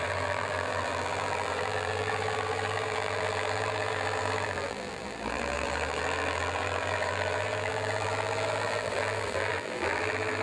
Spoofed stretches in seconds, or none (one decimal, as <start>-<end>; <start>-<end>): 0.0-10.4